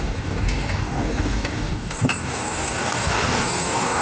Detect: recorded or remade remade